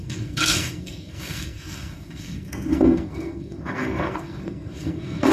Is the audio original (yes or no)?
no